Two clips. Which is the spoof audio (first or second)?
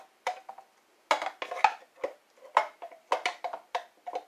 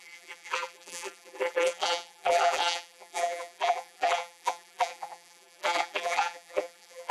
second